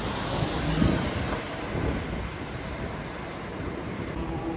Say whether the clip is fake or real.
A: real